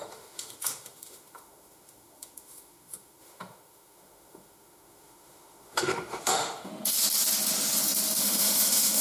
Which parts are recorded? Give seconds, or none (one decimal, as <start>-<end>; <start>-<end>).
6.7-8.2